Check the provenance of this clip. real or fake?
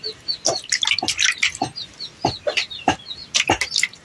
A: real